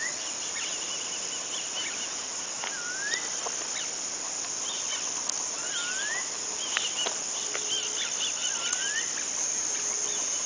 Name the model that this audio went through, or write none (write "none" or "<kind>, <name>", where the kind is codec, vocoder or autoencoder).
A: none